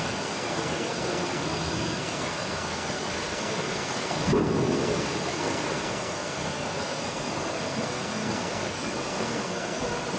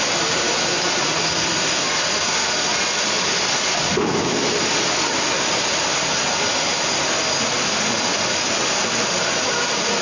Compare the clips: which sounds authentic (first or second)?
second